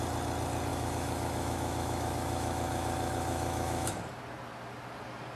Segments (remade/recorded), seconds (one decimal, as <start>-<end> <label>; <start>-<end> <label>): 0.0-0.7 recorded; 0.7-3.9 remade; 3.9-5.4 recorded